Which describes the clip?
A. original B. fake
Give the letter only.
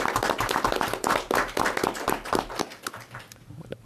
B